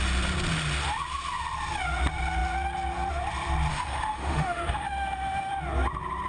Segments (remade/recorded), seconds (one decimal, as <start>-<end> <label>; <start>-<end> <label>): 0.0-3.7 recorded; 3.7-5.5 remade; 5.5-6.3 recorded